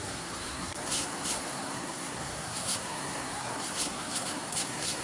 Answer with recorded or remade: remade